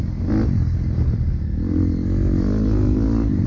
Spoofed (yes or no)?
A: no